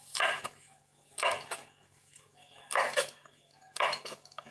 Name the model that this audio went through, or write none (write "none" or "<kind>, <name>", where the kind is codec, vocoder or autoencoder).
autoencoder, DAC-VAE